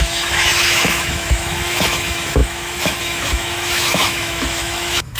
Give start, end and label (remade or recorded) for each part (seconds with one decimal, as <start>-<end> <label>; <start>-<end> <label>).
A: 0.0-5.2 remade